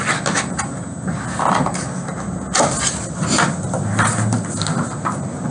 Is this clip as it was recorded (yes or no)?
yes